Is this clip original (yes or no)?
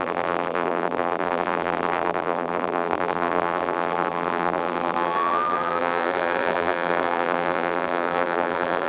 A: no